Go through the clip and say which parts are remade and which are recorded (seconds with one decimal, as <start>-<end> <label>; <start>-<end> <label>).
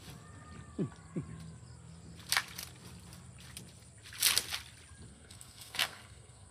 0.0-5.1 recorded; 5.1-6.5 remade